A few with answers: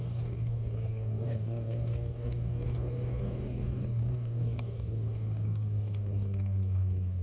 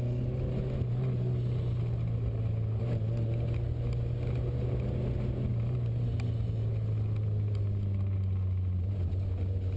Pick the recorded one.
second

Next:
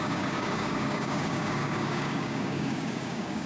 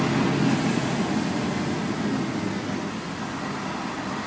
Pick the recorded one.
second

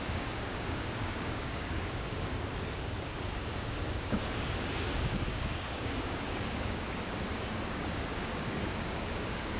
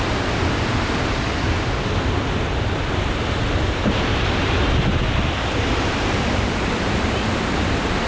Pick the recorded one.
second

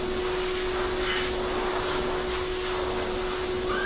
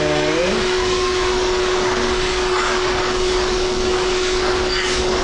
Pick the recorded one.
first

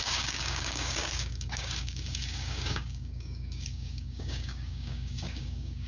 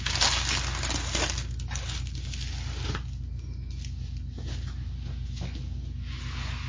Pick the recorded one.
second